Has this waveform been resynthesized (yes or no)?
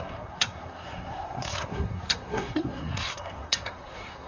yes